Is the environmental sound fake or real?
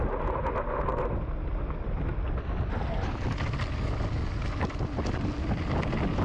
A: real